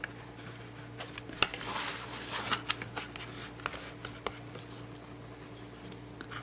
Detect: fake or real real